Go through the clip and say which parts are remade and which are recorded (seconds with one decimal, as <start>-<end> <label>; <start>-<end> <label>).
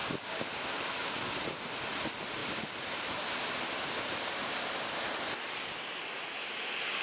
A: 0.0-2.4 recorded; 2.4-6.6 remade; 6.6-7.0 recorded